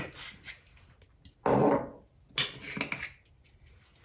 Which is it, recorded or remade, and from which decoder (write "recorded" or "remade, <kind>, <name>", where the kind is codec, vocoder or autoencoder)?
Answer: recorded